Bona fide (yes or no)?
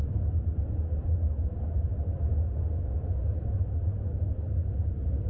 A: yes